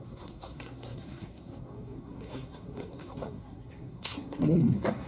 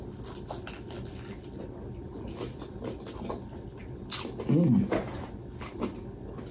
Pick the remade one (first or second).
first